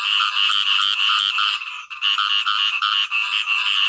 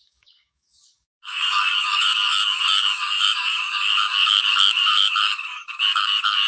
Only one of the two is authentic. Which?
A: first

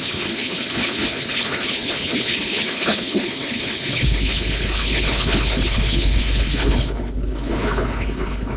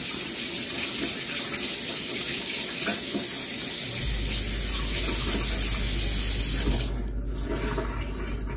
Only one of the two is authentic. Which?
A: second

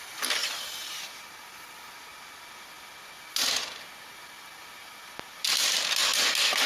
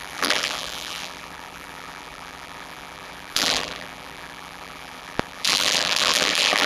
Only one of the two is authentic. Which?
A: first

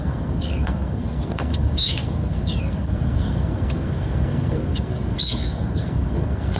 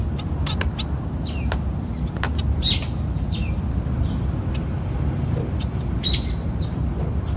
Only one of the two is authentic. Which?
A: second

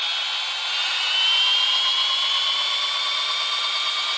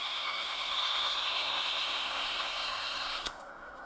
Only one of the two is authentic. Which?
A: first